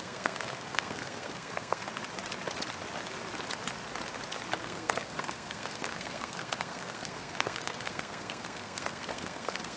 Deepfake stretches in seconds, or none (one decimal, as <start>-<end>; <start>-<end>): 0.0-1.8; 4.6-9.8